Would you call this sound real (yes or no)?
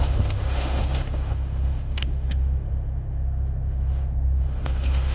no